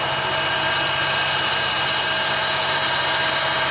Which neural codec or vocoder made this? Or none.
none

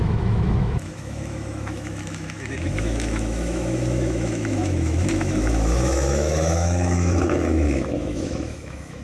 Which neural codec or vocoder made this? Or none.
autoencoder, DAC-VAE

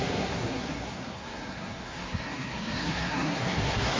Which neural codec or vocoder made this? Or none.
codec, SNAC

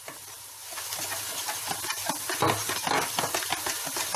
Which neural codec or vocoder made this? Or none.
none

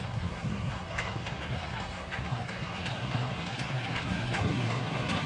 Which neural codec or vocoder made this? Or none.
codec, SNAC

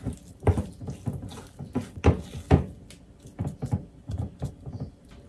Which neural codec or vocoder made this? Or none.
none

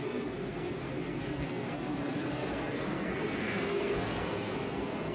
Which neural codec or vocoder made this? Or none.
codec, SNAC